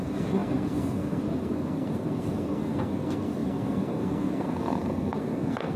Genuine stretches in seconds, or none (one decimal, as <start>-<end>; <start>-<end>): none